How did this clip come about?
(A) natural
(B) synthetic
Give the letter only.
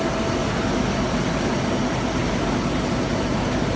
A